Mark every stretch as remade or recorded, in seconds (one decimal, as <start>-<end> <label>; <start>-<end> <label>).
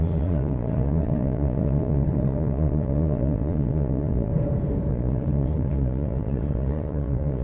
0.0-4.3 remade; 4.3-4.9 recorded; 4.9-7.4 remade